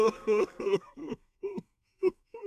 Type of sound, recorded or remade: remade